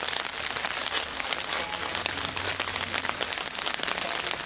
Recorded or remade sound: recorded